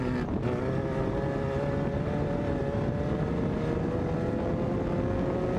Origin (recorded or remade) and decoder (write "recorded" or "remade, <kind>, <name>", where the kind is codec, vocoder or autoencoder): recorded